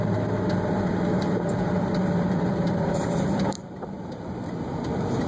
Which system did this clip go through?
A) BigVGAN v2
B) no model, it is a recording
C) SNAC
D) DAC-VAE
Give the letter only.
A